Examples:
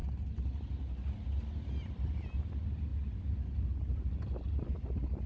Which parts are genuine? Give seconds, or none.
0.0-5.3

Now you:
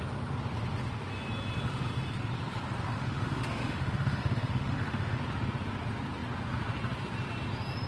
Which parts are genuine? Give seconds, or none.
0.0-2.9; 5.2-7.9

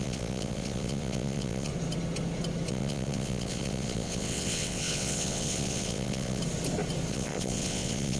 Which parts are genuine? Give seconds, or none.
1.7-2.7; 6.4-7.1

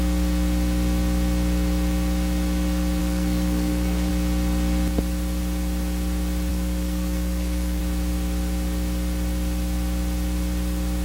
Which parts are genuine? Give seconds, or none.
0.0-3.0; 4.1-6.5; 7.8-11.0

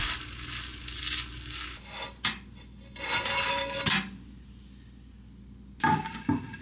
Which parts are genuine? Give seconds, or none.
0.0-6.6

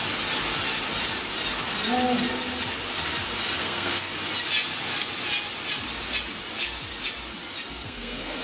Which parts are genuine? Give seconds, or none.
0.0-3.6; 4.1-7.7